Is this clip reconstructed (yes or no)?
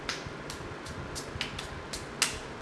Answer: no